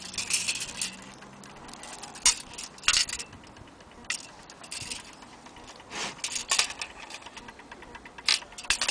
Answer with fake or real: real